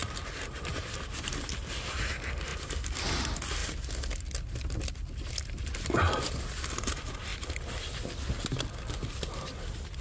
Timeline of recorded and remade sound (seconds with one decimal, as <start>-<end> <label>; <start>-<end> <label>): 0.0-10.0 recorded